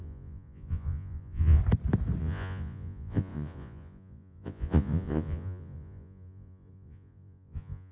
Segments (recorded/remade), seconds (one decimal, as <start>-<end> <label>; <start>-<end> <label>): 0.0-1.6 remade; 1.6-2.2 recorded; 2.2-7.9 remade